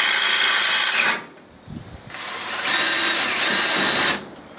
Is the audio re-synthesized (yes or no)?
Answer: no